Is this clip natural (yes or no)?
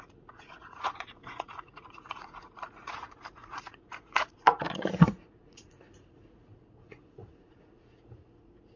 no